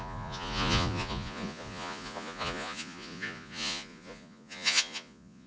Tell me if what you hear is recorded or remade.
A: remade